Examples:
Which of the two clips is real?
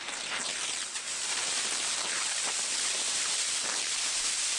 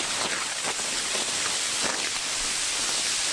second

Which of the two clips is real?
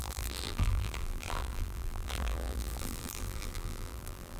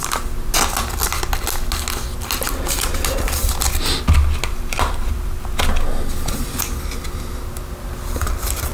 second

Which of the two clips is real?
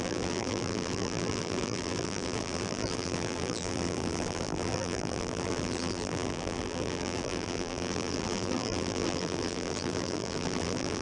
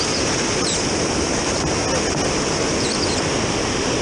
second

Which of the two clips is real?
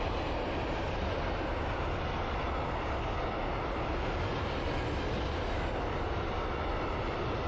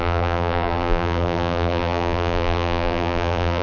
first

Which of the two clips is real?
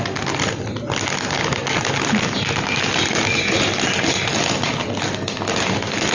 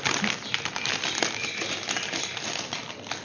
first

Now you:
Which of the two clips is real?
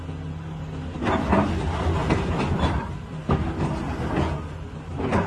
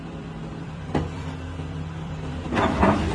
first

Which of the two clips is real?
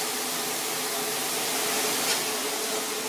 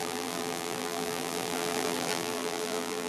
first